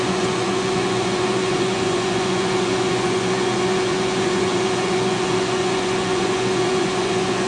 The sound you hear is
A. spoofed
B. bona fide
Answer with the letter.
A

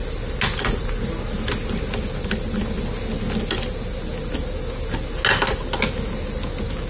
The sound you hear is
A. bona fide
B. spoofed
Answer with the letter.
A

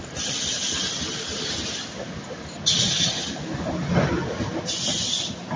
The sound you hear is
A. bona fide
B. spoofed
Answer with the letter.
A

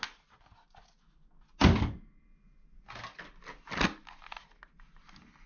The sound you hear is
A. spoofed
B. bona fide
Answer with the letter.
B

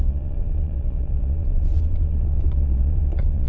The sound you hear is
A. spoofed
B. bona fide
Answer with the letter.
A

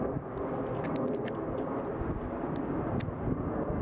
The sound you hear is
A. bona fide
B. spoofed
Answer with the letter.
A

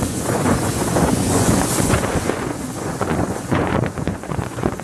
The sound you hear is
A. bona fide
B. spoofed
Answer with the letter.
B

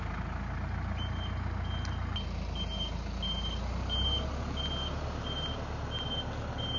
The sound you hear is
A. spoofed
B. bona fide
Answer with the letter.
B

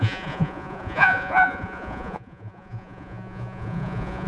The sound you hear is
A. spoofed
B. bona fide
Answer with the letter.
A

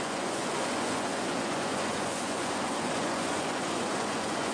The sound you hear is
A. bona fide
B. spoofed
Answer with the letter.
B